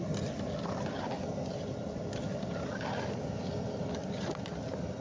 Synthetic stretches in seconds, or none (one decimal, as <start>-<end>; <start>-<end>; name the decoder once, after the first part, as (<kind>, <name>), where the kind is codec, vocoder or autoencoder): none